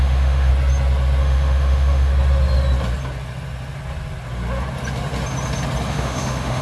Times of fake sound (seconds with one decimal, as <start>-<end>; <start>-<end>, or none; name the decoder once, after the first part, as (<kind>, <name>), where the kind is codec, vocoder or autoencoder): 0.0-0.5 (autoencoder, DAC-VAE); 1.2-2.1; 5.9-6.6